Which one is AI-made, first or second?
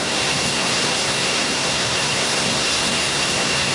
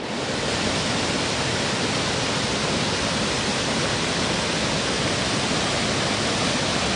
first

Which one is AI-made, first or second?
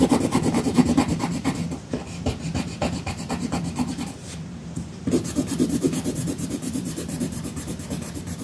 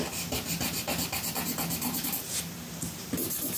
first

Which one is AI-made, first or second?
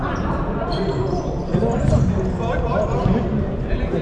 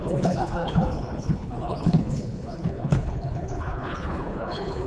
second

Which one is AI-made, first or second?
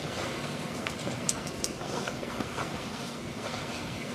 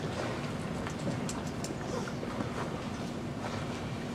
first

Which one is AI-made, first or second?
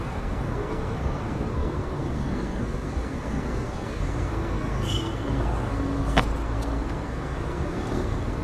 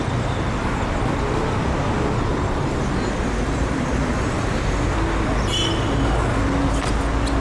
first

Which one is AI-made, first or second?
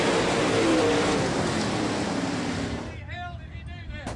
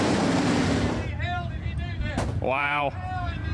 second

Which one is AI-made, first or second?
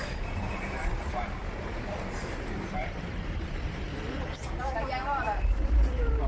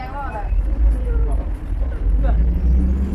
first